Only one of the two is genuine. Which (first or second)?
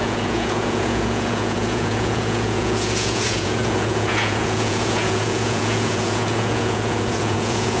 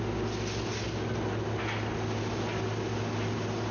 second